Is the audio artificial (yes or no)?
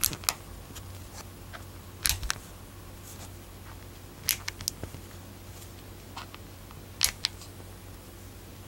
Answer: no